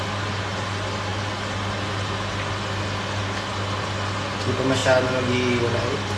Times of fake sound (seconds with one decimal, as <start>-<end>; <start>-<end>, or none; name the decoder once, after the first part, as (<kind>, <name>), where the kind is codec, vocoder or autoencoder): none